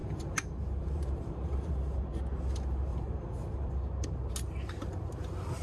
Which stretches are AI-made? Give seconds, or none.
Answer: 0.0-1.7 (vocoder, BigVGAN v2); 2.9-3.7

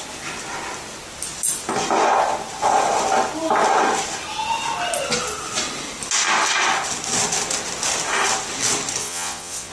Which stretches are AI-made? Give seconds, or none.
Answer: 9.0-9.7 (vocoder, Vocos)